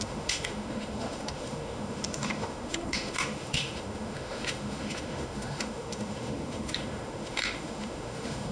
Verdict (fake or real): fake